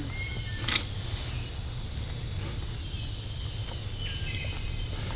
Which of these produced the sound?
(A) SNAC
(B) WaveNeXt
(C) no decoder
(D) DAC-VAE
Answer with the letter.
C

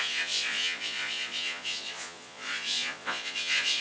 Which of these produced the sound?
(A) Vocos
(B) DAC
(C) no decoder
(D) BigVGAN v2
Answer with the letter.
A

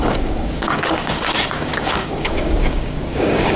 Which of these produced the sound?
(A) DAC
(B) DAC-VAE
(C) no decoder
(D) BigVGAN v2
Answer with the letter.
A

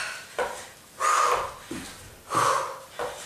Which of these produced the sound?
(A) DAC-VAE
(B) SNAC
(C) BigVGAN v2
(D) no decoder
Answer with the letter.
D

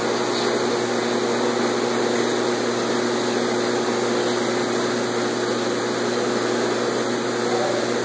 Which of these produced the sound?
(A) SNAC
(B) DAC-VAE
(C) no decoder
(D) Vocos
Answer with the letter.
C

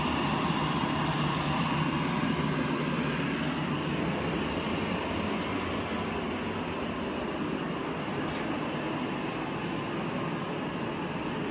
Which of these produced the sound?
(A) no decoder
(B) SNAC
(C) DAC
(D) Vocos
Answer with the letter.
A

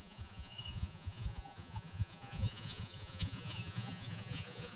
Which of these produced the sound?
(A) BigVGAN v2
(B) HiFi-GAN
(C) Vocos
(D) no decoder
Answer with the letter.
C